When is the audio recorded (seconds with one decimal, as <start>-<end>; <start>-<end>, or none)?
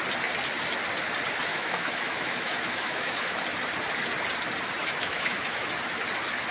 0.0-1.5; 3.4-4.8; 5.7-6.5